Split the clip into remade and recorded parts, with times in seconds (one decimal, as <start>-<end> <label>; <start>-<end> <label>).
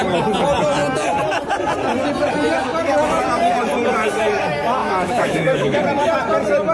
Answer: 0.0-4.8 recorded; 4.8-5.8 remade; 5.8-6.7 recorded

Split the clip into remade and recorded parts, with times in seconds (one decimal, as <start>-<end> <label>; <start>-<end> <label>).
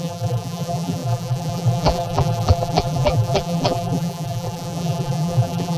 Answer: 0.0-5.8 remade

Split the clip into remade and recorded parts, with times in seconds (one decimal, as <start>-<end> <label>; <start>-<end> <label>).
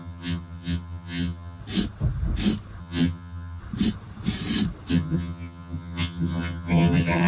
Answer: 0.0-1.6 remade; 1.6-2.8 recorded; 2.8-3.6 remade; 3.6-4.9 recorded; 4.9-7.3 remade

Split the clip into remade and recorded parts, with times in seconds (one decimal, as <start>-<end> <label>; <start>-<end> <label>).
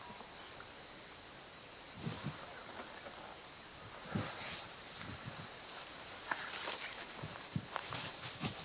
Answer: 0.0-7.5 recorded; 7.5-8.6 remade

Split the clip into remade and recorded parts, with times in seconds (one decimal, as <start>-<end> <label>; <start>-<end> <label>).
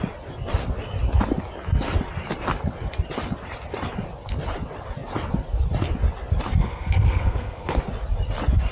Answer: 0.0-6.6 recorded; 6.6-7.8 remade; 7.8-8.7 recorded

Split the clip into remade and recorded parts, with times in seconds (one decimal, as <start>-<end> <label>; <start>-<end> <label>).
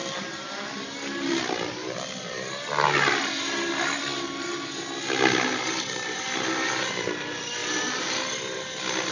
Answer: 0.0-9.1 recorded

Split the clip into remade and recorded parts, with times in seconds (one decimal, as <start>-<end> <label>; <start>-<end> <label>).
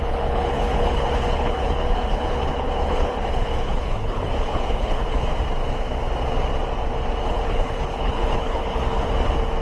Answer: 0.0-5.3 remade; 5.3-7.2 recorded; 7.2-8.8 remade; 8.8-9.6 recorded